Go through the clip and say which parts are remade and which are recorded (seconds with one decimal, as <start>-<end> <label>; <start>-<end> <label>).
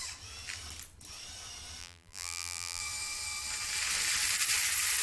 0.0-1.8 recorded; 1.8-2.8 remade; 2.8-5.0 recorded